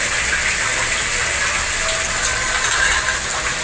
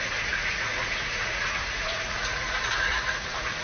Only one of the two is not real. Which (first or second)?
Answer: second